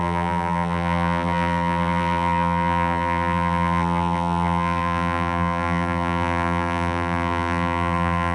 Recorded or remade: remade